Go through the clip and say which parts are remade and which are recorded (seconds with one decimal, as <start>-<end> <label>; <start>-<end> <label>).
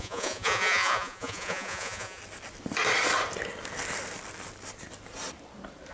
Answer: 0.0-2.2 remade; 2.2-5.9 recorded